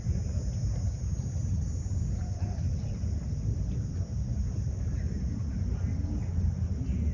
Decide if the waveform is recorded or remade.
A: recorded